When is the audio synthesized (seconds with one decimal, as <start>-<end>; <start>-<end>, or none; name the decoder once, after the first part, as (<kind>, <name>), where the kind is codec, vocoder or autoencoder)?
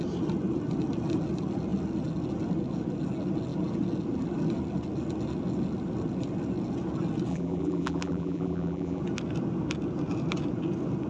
7.3-9.0 (vocoder, BigVGAN v2)